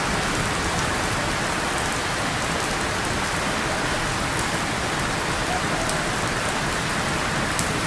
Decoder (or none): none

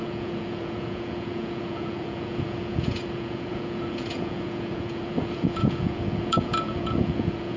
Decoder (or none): vocoder, Vocos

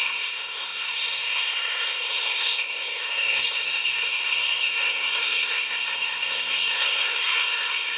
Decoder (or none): codec, SNAC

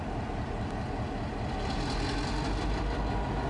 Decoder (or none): none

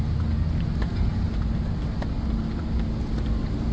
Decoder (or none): none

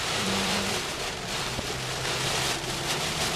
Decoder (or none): vocoder, BigVGAN v2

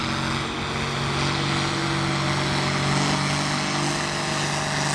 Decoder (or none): none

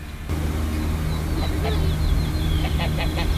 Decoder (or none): none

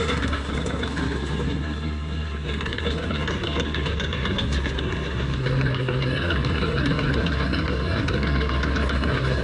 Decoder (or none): codec, SNAC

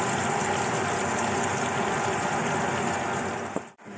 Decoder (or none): none